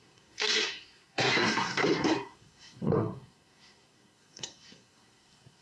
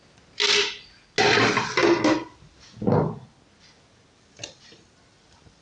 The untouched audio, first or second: second